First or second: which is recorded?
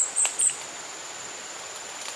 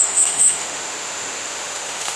first